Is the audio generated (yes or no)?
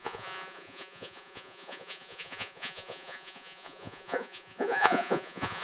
yes